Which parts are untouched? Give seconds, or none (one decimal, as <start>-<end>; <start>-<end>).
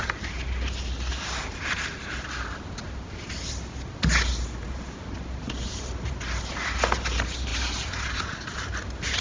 0.0-9.2